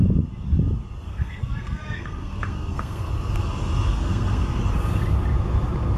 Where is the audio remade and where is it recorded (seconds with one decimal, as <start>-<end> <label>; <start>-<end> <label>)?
0.0-1.1 recorded; 1.1-3.1 remade; 3.1-3.9 recorded; 3.9-4.6 remade; 4.6-6.0 recorded